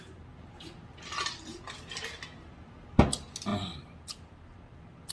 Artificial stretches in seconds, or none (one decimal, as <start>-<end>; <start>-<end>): none